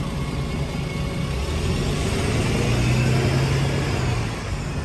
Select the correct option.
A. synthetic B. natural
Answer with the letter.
B